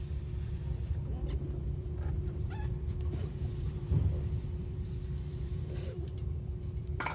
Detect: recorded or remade remade